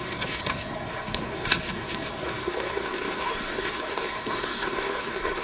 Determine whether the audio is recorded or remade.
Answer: remade